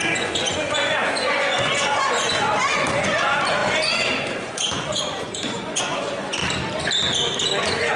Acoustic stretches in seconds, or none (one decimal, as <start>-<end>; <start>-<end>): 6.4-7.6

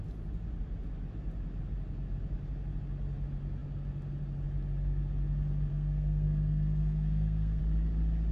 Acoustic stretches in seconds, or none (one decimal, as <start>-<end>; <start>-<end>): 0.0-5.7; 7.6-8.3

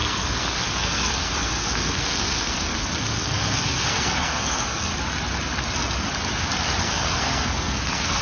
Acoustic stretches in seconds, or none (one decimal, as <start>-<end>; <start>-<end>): 4.9-6.8